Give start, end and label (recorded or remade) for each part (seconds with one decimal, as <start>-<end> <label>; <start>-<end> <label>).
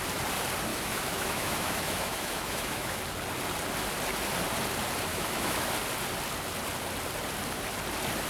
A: 0.0-0.7 recorded; 0.7-3.0 remade; 3.0-5.1 recorded; 5.1-5.7 remade; 5.7-8.3 recorded